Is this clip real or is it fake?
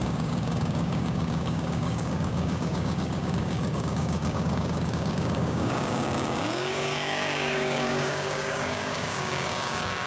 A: fake